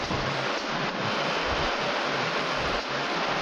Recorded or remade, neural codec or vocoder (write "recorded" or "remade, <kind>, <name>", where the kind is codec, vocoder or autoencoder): recorded